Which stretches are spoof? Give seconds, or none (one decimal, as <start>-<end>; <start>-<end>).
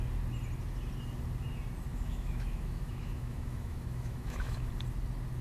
1.9-4.7